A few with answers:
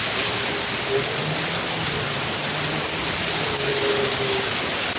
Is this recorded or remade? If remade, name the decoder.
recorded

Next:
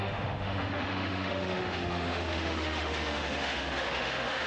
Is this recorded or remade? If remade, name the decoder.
remade, autoencoder, DAC-VAE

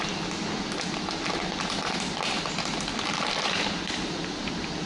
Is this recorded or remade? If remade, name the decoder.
recorded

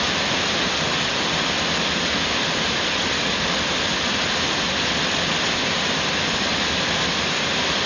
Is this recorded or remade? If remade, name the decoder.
recorded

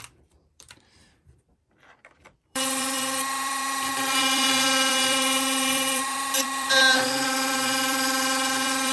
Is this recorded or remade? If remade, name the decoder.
remade, vocoder, BigVGAN v2